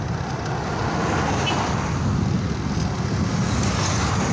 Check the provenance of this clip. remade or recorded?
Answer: recorded